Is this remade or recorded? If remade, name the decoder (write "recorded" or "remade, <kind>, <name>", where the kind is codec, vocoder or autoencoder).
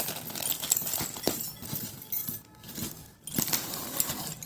recorded